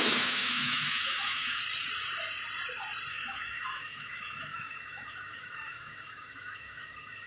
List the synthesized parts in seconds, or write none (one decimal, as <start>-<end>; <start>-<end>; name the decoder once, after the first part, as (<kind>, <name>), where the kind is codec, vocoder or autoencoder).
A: 0.0-1.6 (autoencoder, DAC-VAE); 3.1-7.3